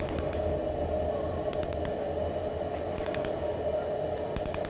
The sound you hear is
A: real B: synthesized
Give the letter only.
A